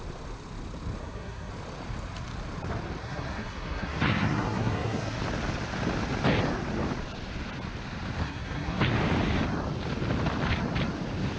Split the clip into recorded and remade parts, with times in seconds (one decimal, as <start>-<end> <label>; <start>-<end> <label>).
0.0-1.0 recorded; 1.0-1.5 remade; 1.5-3.0 recorded; 3.0-5.2 remade; 5.2-8.2 recorded; 8.2-8.8 remade; 8.8-11.4 recorded